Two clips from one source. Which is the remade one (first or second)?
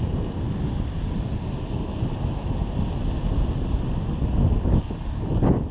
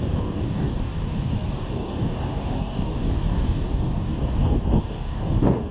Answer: second